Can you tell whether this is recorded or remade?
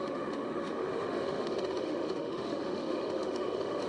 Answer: remade